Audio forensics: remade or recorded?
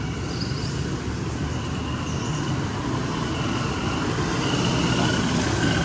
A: recorded